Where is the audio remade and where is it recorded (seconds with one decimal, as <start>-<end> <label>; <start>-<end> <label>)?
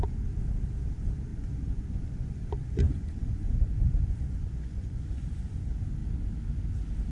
0.0-1.3 recorded; 1.3-5.6 remade; 5.6-7.1 recorded